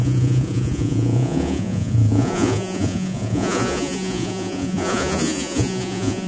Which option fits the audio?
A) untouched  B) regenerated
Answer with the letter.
B